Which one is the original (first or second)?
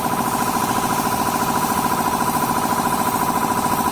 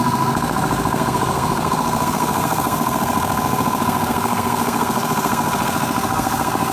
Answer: first